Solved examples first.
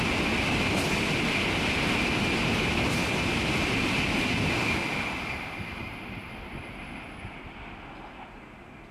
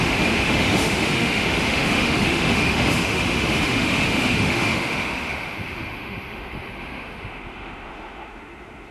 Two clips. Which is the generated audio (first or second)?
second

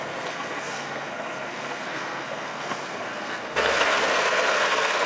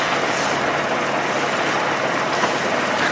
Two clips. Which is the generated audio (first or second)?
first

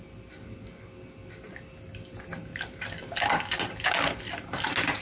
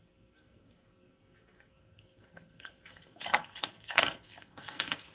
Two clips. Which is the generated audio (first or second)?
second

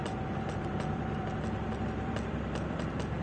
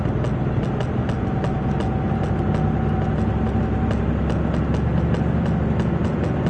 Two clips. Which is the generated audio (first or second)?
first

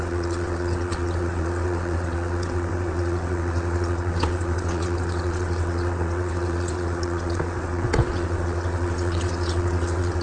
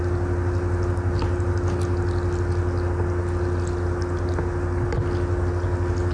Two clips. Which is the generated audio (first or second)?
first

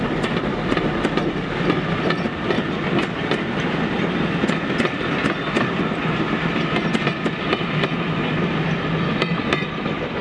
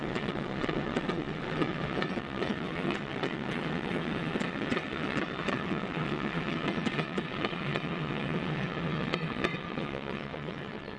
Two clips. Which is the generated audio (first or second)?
second